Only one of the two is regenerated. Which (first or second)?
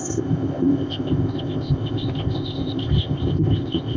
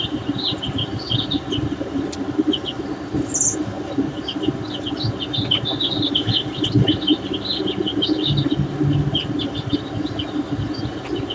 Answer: first